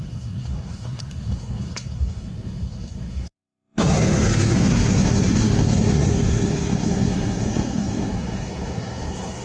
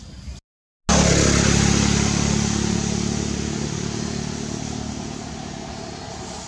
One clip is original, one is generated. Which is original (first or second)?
second